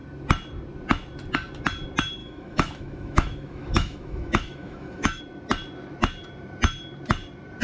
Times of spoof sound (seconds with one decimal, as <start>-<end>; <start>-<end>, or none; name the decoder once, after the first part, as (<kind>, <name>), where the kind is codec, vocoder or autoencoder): 2.2-5.2 (autoencoder, DAC-VAE)